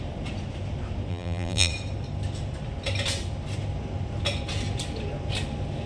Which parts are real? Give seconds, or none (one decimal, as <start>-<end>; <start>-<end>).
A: 0.0-1.1; 1.7-5.9